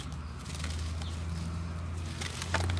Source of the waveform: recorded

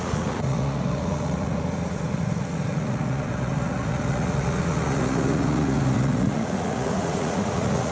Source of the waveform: remade